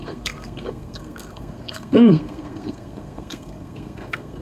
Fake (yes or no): yes